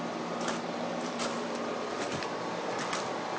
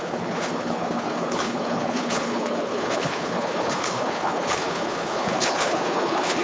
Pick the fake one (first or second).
second